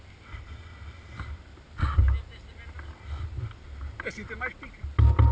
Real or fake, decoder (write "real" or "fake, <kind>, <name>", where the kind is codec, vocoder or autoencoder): real